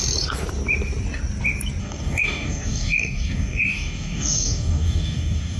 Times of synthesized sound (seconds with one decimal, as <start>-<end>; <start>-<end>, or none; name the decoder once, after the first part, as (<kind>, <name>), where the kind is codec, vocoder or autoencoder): 1.8-5.6 (codec, DAC)